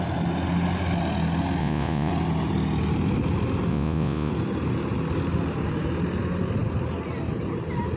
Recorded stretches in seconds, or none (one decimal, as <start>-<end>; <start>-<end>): 0.0-1.6; 2.1-3.7; 4.3-8.0